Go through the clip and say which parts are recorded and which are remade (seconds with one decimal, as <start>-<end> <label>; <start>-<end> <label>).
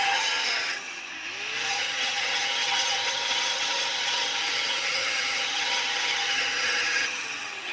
0.0-1.1 remade; 1.1-1.7 recorded; 1.7-7.7 remade